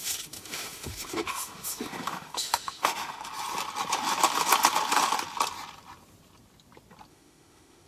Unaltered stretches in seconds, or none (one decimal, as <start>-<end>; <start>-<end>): 3.3-7.1